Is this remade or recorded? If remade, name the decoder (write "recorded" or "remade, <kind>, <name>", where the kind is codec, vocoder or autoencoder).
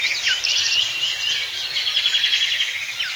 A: recorded